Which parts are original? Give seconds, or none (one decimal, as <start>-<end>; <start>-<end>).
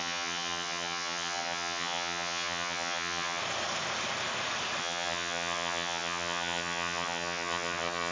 3.4-4.8